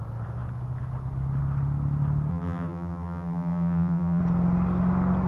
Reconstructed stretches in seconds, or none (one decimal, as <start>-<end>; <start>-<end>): 2.3-4.2